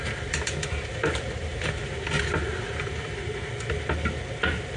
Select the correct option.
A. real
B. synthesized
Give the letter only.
A